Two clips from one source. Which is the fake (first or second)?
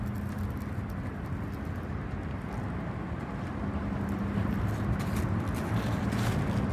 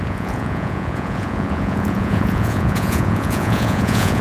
second